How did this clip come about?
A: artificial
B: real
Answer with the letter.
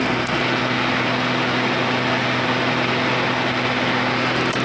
B